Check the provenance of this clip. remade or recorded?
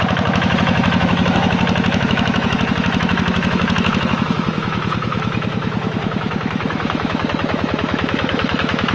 remade